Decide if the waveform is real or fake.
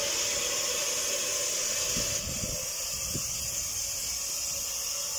real